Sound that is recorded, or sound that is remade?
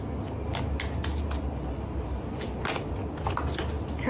recorded